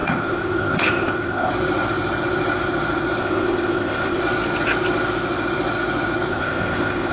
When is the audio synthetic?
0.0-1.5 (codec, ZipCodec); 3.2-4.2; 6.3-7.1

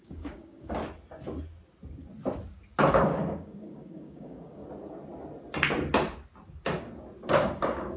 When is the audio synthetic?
0.0-0.8 (codec, DAC); 2.9-4.6; 7.4-8.0

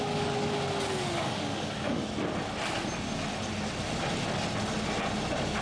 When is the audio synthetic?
0.0-2.0 (codec, DAC)